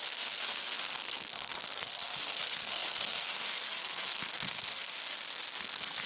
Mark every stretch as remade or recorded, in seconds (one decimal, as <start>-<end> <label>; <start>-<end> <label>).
0.0-4.9 remade; 4.9-5.6 recorded; 5.6-6.1 remade